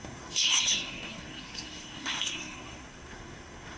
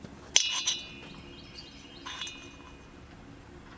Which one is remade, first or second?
first